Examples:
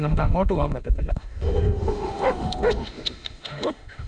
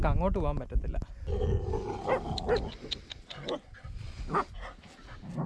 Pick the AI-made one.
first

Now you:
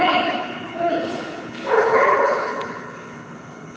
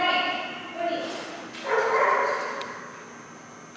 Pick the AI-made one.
first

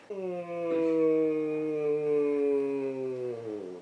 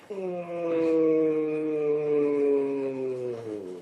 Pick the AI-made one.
second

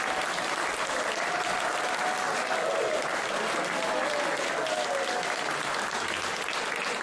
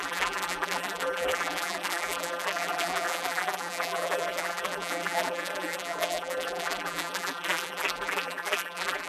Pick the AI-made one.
second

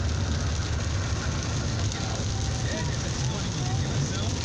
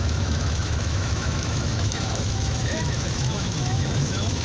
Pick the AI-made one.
second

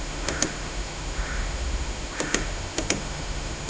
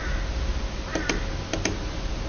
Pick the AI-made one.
first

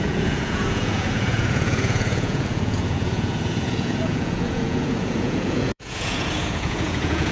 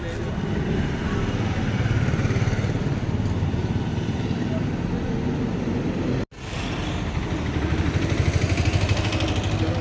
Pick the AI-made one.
first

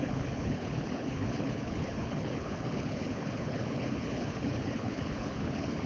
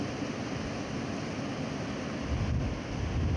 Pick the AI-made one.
first